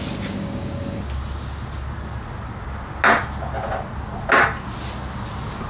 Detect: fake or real real